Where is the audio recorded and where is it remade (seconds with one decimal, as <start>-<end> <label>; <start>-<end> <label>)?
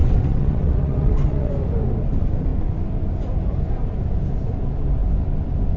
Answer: 0.0-1.5 remade; 1.5-5.8 recorded